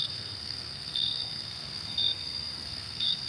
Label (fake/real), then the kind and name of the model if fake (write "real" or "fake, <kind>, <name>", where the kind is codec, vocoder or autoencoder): fake, codec, SNAC